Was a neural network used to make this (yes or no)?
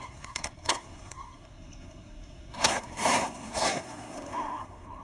yes